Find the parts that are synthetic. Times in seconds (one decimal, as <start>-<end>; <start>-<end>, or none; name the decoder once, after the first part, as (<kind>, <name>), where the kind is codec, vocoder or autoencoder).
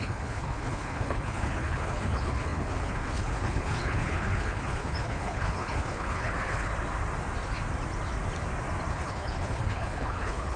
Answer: 0.0-6.7 (codec, HILCodec); 8.9-10.6